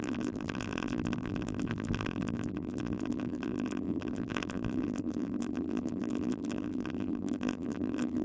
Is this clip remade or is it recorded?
remade